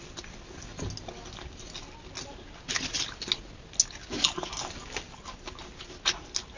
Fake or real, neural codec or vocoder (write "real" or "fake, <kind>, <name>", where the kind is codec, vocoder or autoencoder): real